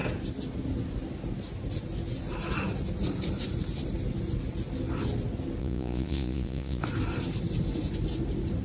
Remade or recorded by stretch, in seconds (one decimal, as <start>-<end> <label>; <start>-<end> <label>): 0.0-5.6 recorded; 5.6-6.8 remade; 6.8-8.6 recorded